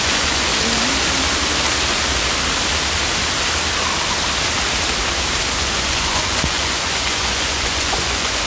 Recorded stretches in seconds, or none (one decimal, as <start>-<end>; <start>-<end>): 0.5-5.6